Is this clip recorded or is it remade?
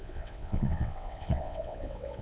remade